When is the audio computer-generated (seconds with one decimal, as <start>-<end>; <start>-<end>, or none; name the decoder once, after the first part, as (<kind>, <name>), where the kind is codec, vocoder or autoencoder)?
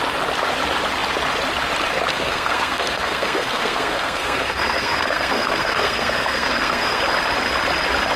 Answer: 2.1-7.0 (codec, SNAC)